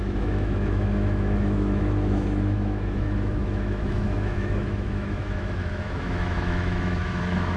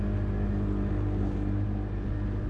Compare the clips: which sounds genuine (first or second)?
second